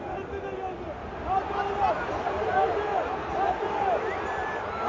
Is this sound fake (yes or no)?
no